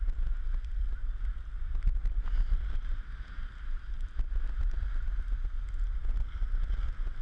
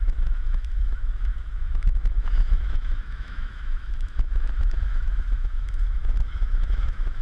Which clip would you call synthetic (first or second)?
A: second